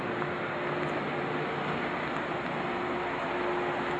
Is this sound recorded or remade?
recorded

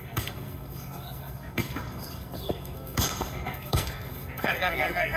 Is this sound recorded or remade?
remade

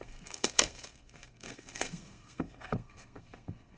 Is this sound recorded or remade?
remade